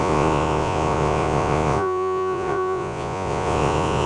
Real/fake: fake